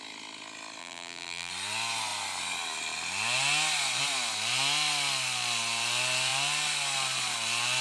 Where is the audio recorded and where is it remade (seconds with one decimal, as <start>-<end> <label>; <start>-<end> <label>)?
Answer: 0.0-0.8 recorded; 0.8-1.5 remade; 1.5-7.8 recorded